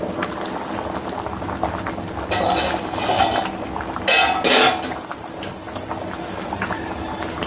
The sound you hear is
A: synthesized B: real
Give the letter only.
B